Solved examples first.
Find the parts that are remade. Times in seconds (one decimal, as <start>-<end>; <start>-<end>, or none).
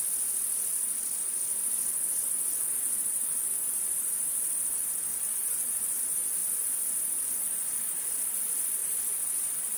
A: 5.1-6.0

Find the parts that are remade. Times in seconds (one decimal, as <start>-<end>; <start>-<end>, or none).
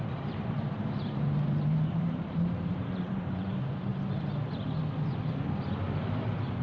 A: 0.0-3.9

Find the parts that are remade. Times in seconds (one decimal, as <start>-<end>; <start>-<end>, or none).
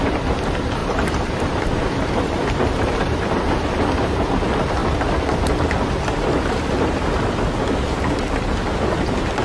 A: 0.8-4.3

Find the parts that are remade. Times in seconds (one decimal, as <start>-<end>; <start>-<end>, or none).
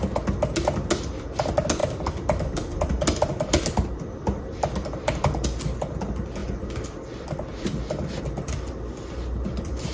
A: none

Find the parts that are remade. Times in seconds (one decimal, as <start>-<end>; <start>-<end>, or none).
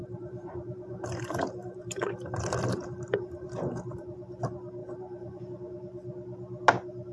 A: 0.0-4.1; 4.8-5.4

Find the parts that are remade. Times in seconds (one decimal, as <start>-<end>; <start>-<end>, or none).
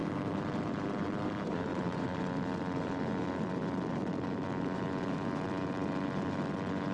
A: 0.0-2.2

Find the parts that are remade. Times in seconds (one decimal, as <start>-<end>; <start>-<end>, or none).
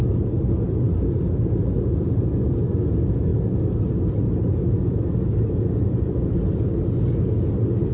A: none